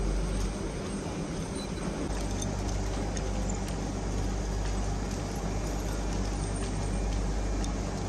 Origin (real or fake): real